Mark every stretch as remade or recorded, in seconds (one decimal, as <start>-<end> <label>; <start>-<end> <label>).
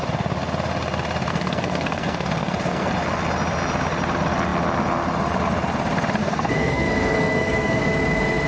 0.0-1.3 recorded; 1.3-2.9 remade; 2.9-6.2 recorded; 6.2-7.8 remade; 7.8-8.5 recorded